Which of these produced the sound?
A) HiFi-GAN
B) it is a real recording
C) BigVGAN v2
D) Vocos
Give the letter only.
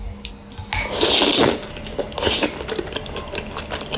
B